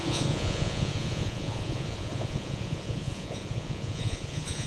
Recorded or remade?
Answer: remade